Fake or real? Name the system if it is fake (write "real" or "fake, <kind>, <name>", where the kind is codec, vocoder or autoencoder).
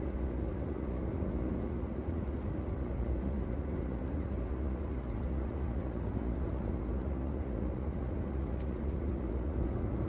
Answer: fake, vocoder, Vocos